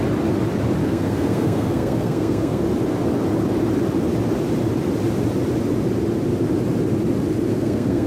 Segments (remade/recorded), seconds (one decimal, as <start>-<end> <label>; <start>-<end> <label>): 0.0-0.8 recorded; 0.8-2.6 remade; 2.6-7.5 recorded; 7.5-8.1 remade